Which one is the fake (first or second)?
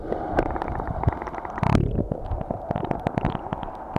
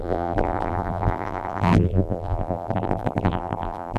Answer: second